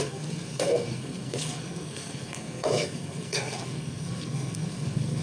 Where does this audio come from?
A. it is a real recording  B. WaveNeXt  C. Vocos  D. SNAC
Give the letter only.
D